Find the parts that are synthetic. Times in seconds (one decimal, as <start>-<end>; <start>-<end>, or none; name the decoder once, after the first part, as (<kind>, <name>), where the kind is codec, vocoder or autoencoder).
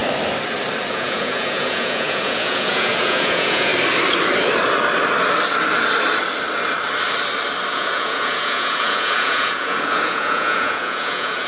0.9-3.7 (vocoder, Vocos); 7.7-11.5